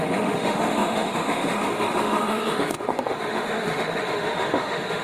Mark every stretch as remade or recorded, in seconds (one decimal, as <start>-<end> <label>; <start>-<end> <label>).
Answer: 0.0-5.0 remade